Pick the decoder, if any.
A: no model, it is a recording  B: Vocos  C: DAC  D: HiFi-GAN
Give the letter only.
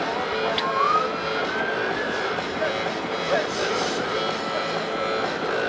A